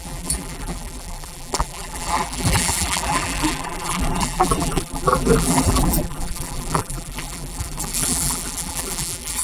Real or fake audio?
fake